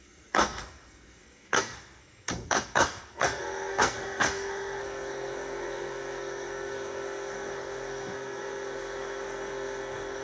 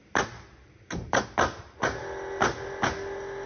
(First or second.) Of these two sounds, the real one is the second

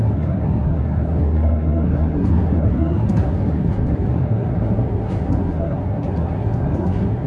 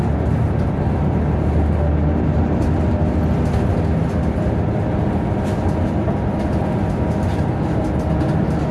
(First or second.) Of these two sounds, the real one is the second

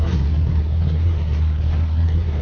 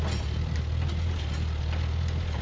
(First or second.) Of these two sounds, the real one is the second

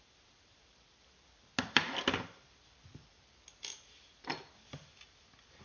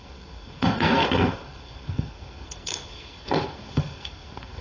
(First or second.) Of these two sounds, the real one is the first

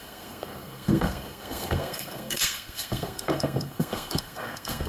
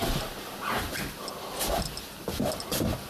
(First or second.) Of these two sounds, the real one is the second